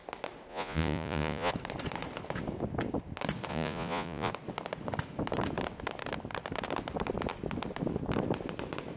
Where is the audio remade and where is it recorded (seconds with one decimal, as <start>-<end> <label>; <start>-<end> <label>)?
0.0-0.5 recorded; 0.5-1.5 remade; 1.5-3.5 recorded; 3.5-4.3 remade; 4.3-9.0 recorded